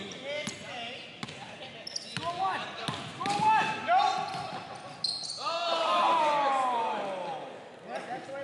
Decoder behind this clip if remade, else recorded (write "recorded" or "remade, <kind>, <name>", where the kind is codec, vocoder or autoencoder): recorded